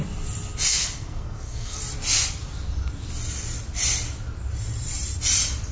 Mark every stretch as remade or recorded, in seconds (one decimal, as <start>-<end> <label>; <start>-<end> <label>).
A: 0.0-0.7 recorded; 0.7-1.8 remade; 1.8-5.7 recorded